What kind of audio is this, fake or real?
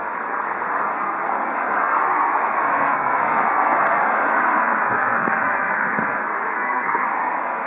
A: fake